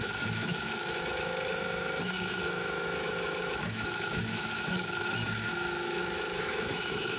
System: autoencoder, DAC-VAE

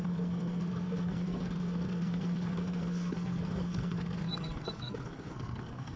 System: codec, SNAC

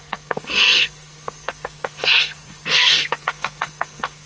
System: codec, SNAC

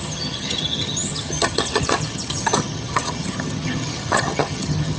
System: vocoder, HiFi-GAN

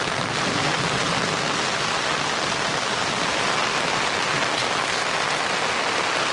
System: none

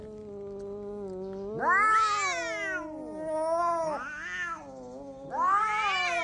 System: none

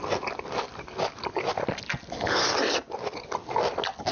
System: none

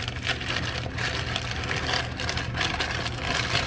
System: none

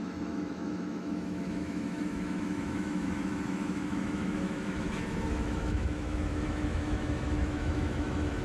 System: autoencoder, DAC-VAE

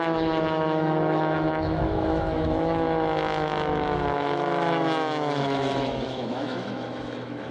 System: autoencoder, DAC-VAE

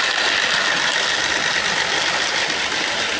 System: none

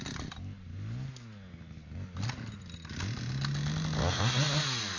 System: none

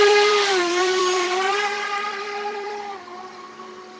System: vocoder, BigVGAN v2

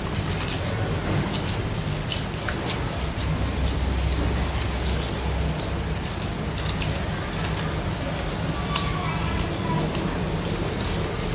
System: none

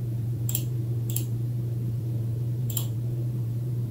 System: vocoder, BigVGAN v2